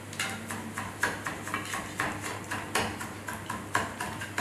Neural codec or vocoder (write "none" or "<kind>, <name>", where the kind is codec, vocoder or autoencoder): none